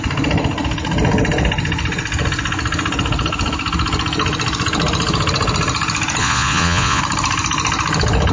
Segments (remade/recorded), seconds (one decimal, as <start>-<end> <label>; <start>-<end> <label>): 0.0-6.2 recorded; 6.2-7.0 remade; 7.0-8.3 recorded